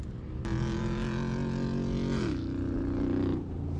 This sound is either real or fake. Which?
real